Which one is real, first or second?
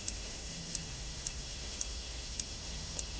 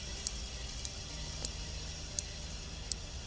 second